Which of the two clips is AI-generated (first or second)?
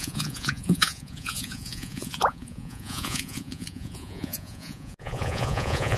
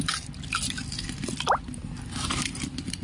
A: first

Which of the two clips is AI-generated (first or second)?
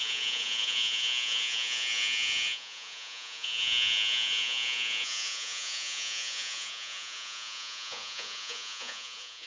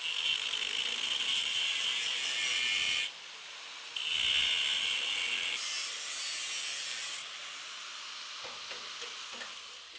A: first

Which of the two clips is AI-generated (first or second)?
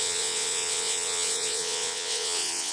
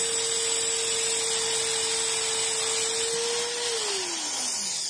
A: first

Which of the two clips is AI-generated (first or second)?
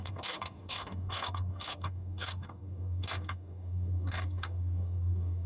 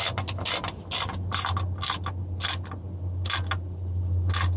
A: first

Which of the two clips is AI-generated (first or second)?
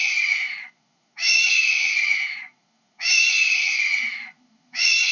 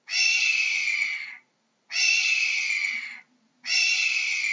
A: first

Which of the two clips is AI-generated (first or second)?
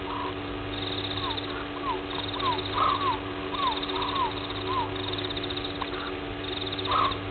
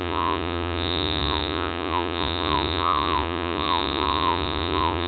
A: second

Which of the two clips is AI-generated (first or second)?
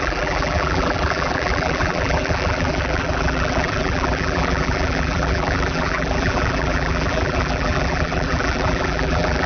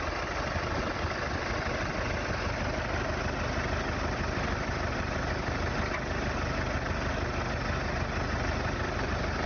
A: first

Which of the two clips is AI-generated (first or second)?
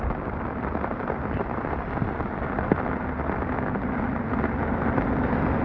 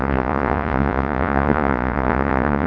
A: second